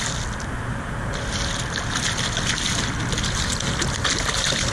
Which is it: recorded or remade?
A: recorded